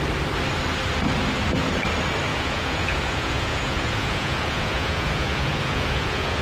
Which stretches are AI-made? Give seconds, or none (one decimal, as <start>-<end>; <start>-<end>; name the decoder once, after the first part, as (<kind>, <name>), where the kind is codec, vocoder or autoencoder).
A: 2.3-6.4 (vocoder, Vocos)